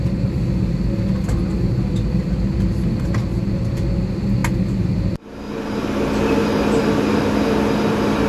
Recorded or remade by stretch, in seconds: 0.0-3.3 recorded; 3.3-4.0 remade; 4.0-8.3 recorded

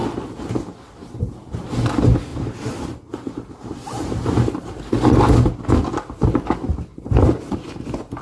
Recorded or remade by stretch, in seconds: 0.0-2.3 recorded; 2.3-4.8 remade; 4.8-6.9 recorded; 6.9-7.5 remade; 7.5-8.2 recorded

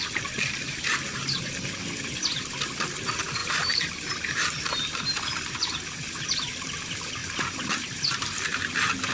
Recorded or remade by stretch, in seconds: 0.0-9.1 recorded

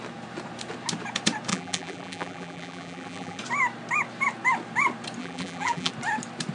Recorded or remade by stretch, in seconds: 0.0-1.5 recorded; 1.5-3.4 remade; 3.4-5.2 recorded; 5.2-5.9 remade; 5.9-6.5 recorded